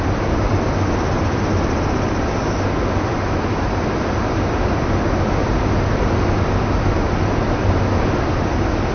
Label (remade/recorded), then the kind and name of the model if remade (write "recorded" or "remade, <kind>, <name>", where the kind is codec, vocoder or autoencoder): recorded